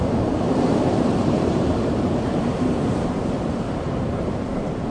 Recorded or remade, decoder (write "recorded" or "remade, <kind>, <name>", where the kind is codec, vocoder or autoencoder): remade, vocoder, BigVGAN v2